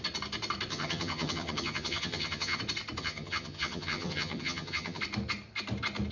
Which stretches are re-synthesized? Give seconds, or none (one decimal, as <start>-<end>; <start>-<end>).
0.7-2.6; 3.0-5.0